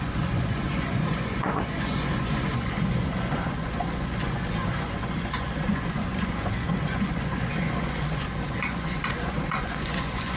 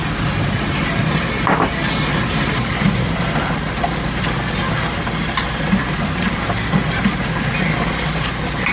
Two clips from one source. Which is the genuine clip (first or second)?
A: second